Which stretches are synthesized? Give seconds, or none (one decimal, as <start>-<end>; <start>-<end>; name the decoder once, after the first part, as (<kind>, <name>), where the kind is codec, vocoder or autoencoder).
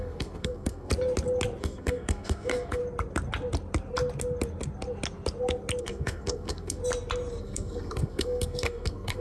0.0-0.9 (codec, SNAC); 1.6-2.8; 5.8-6.8; 7.4-9.2